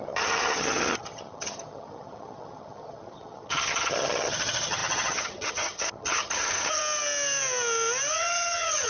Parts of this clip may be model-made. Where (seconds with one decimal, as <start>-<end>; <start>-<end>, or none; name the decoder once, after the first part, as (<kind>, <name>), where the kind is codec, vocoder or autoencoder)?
0.0-6.8 (vocoder, HiFi-GAN); 8.1-8.9